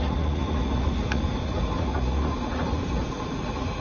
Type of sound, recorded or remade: remade